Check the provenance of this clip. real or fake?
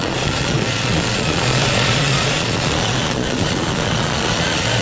fake